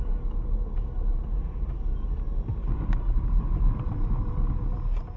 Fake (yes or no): no